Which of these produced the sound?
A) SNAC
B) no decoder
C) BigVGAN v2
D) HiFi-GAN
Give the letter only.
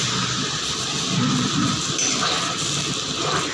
B